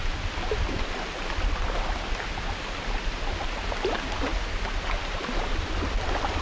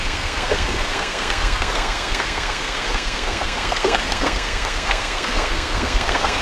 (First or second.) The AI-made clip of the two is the second